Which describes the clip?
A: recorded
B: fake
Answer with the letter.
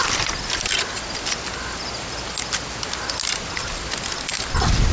A